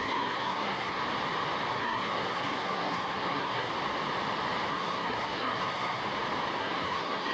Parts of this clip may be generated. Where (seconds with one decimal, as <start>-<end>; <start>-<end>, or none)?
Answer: 0.0-1.0; 1.7-3.7; 4.7-6.0; 6.6-7.3